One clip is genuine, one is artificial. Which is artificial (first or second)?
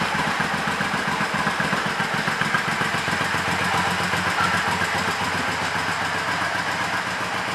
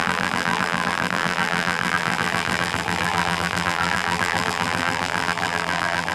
second